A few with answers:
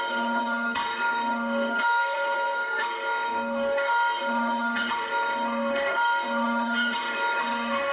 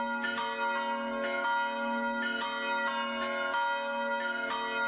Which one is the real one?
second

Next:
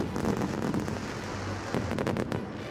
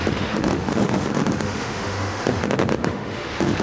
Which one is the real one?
first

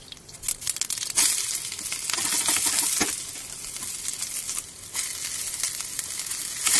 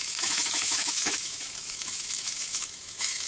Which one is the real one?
first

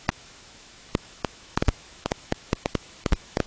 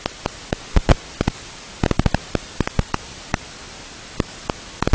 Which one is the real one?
second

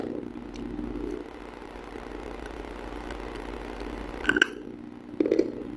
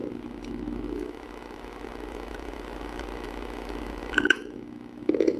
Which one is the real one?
first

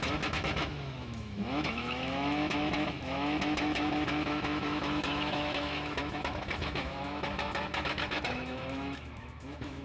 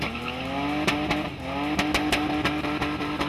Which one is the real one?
second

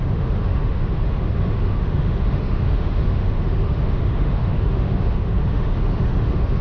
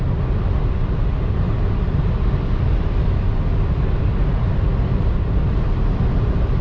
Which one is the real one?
second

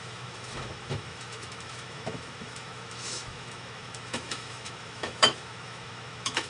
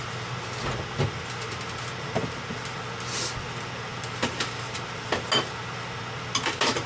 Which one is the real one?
second